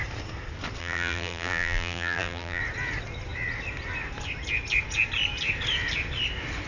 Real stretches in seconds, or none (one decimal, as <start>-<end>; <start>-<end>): 0.0-0.8; 2.6-6.7

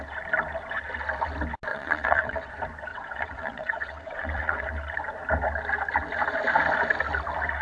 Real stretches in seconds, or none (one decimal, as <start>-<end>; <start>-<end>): 0.0-1.7; 2.5-2.9; 4.7-7.6

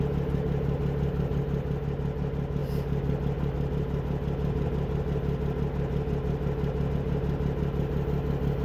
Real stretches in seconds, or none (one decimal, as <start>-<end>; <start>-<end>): 0.0-8.6

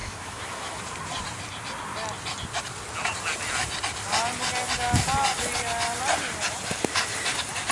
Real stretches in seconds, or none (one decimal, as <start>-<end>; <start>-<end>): 0.8-7.7